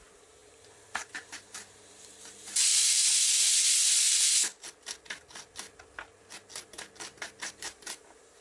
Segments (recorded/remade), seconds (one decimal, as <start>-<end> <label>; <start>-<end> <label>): 0.0-3.0 remade; 3.0-7.4 recorded; 7.4-8.4 remade